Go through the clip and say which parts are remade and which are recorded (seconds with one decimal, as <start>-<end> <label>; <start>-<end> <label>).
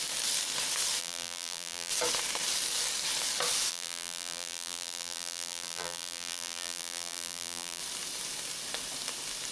0.0-1.0 recorded; 1.0-1.9 remade; 1.9-3.7 recorded; 3.7-7.8 remade; 7.8-9.5 recorded